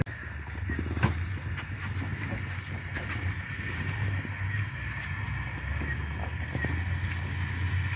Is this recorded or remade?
recorded